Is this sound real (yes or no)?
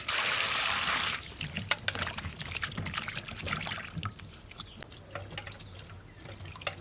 yes